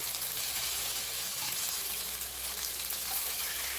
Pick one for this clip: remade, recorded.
remade